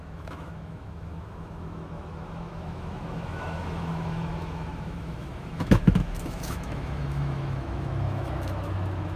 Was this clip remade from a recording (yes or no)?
yes